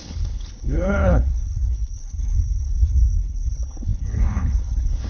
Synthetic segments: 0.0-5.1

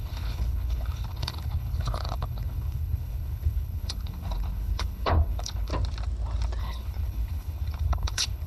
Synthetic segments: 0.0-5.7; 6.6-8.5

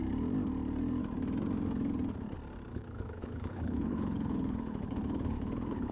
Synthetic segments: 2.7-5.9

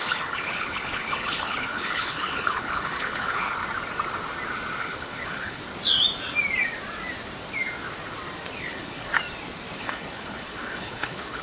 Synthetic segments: 0.0-3.6; 4.8-5.6; 8.6-9.1; 9.8-11.4